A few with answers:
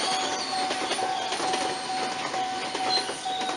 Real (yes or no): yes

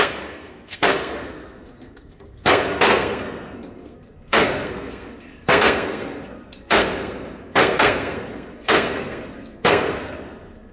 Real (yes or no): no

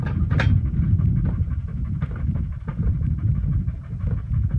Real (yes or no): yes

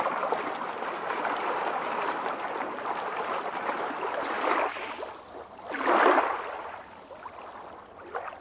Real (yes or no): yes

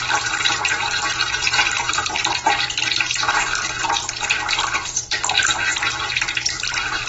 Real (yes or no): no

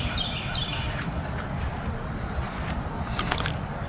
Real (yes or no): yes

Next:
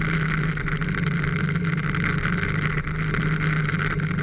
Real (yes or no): yes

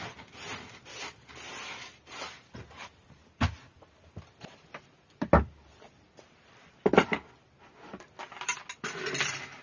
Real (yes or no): yes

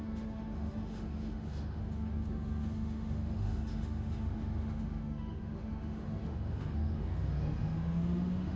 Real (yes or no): no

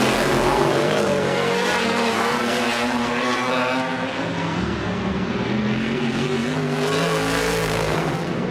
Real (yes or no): no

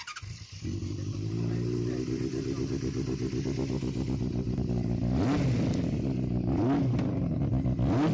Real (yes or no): yes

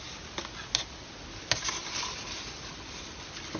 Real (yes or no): yes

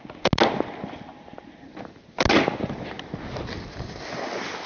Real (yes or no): yes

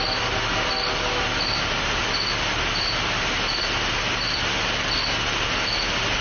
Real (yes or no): yes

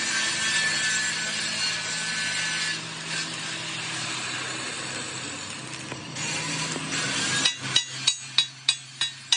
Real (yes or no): yes